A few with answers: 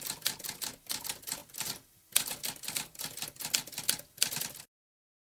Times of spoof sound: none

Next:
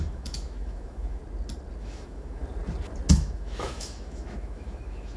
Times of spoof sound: 0.0-1.2 (autoencoder, DAC-VAE); 1.8-2.4; 3.1-5.2

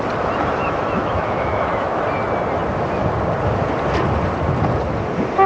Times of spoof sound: 0.6-2.0 (autoencoder, DAC-VAE)

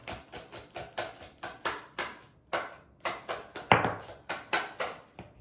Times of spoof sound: none

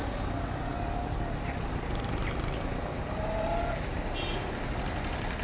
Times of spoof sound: none